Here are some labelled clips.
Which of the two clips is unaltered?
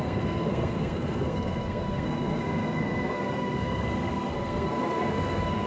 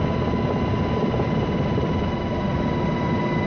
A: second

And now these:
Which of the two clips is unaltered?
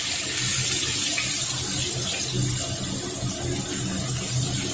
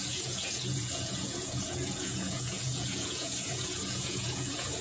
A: first